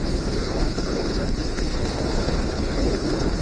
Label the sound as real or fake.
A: fake